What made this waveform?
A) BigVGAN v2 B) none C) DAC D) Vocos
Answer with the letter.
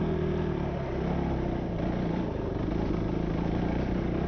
B